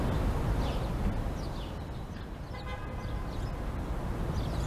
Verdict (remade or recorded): recorded